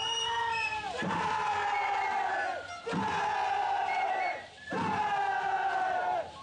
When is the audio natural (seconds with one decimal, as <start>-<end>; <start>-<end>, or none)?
1.6-3.5